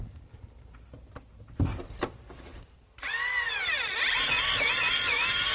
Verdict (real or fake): fake